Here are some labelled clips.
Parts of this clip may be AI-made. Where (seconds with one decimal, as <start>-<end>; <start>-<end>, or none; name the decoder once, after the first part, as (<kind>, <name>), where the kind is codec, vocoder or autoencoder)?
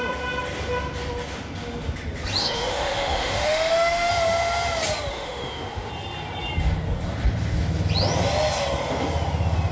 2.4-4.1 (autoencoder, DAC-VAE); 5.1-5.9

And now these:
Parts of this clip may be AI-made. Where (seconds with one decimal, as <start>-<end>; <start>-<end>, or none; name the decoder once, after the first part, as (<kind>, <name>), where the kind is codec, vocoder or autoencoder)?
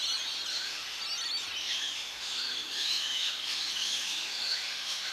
0.5-1.0 (autoencoder, DAC-VAE); 1.6-5.1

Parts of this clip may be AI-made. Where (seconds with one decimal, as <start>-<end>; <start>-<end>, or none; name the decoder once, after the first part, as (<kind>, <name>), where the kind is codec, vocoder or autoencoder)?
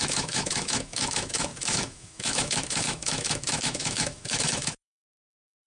0.0-5.7 (autoencoder, DAC-VAE)